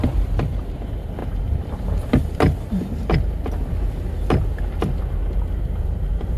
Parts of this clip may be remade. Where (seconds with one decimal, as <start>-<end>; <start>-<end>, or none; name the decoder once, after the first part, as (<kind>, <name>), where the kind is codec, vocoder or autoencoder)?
none